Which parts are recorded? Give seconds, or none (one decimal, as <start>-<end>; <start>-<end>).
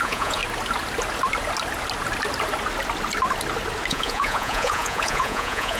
0.4-3.9